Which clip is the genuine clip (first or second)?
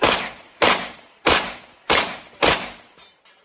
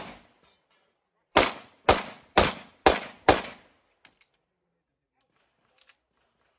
second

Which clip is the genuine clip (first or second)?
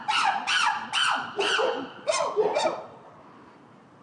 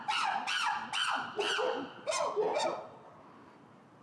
second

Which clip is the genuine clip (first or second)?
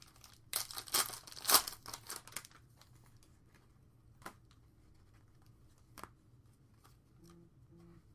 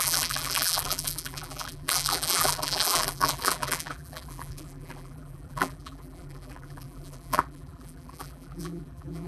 first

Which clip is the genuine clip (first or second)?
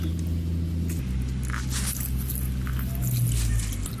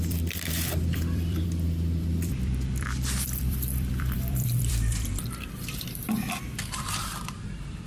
first